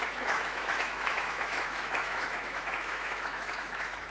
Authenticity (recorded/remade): remade